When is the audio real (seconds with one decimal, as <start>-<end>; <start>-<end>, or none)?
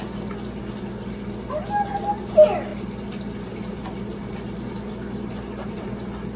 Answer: 0.0-6.4